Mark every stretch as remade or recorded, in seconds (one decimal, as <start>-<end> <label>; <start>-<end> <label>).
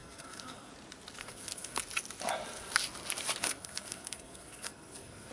0.0-0.7 remade; 0.7-1.2 recorded; 1.2-1.8 remade; 1.8-3.4 recorded; 3.4-5.3 remade